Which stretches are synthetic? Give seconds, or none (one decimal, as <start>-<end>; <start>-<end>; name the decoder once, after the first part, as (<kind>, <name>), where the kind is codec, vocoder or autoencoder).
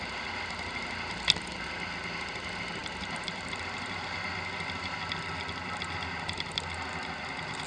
2.8-4.2 (vocoder, BigVGAN v2)